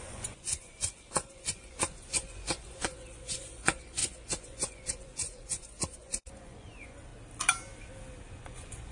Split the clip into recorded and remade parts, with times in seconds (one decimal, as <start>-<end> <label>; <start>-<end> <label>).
0.0-7.1 remade; 7.1-8.3 recorded; 8.3-8.9 remade